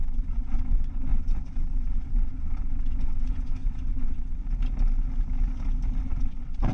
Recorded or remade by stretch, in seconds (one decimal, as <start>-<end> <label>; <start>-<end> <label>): 0.0-4.4 remade; 4.4-6.0 recorded; 6.0-6.7 remade